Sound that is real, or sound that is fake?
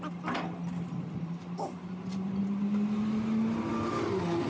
real